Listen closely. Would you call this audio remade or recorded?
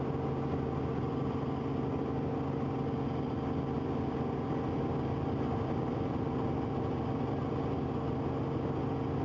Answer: recorded